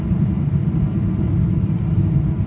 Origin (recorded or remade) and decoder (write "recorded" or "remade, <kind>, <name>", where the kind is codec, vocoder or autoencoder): remade, vocoder, BigVGAN v2